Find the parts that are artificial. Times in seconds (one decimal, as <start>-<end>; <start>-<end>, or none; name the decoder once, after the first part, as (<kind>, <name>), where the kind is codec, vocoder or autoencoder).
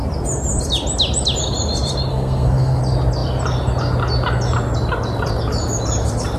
2.1-2.8 (codec, SNAC)